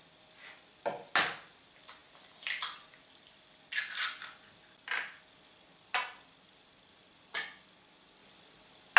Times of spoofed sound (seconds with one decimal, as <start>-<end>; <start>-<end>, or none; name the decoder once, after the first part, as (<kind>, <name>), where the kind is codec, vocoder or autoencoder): none